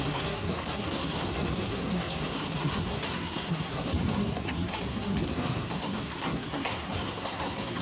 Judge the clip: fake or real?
fake